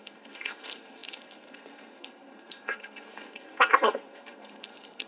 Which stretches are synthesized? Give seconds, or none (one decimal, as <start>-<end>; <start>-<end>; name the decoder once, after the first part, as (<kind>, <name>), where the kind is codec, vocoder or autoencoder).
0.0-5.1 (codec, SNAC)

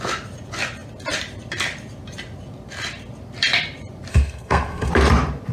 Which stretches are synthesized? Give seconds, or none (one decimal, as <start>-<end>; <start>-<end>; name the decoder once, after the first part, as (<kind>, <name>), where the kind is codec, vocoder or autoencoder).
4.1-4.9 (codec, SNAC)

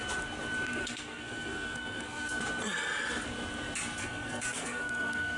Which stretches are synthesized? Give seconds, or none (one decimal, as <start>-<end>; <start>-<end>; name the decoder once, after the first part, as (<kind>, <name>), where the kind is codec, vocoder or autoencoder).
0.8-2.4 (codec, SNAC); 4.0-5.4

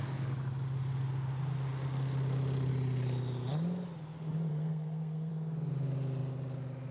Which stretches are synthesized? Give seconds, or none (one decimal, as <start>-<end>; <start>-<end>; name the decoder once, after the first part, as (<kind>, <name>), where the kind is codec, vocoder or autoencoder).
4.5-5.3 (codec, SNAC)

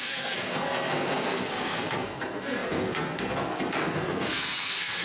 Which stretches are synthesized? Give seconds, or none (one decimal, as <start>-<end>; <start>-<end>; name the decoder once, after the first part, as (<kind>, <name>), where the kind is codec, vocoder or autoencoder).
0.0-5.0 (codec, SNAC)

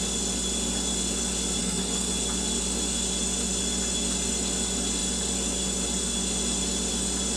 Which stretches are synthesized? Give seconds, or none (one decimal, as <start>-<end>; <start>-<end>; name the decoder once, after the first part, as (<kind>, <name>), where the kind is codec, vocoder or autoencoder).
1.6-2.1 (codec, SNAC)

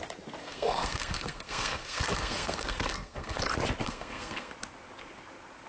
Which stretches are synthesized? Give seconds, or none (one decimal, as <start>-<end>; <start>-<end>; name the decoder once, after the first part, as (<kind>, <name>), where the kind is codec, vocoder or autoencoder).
0.4-3.4 (codec, SNAC); 3.8-4.5